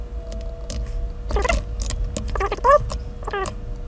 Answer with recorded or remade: recorded